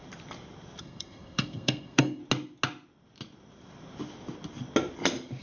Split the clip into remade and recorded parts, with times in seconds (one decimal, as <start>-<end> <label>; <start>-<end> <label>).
0.0-0.8 recorded; 0.8-2.2 remade; 2.2-5.4 recorded